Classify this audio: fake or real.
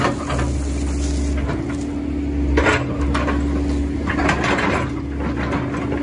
real